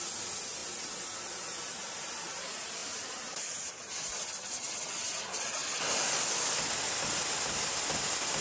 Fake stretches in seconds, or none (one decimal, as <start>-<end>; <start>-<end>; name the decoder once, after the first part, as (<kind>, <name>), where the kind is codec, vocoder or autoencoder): 2.8-3.7 (vocoder, BigVGAN v2)